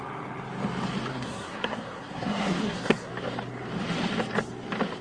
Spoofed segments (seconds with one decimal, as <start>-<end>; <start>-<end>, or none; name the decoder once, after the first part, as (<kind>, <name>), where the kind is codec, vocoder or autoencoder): 1.1-3.1 (codec, SNAC)